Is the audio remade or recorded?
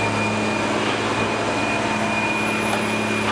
recorded